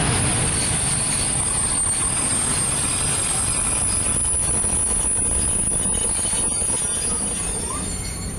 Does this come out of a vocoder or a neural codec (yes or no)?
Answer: no